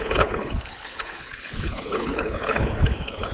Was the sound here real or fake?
fake